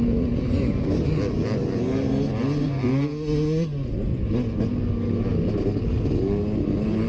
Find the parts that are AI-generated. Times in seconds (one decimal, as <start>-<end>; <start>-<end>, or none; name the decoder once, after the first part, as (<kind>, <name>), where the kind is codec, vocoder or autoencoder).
none